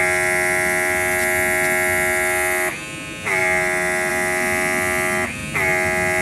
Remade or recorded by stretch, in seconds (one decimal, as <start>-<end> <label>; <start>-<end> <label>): 0.0-6.2 recorded